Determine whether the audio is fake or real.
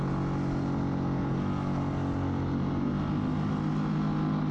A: real